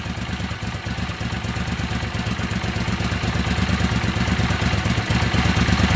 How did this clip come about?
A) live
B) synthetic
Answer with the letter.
A